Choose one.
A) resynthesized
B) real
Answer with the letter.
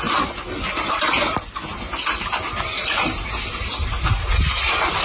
B